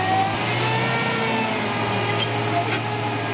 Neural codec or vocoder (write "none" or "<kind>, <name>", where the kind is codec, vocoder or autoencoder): none